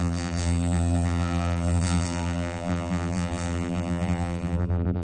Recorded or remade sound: remade